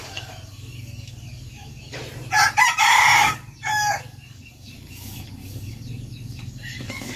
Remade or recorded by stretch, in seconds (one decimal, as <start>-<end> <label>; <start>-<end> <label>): 0.0-2.0 remade; 2.0-2.9 recorded; 2.9-7.2 remade